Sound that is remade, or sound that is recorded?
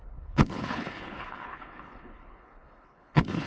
remade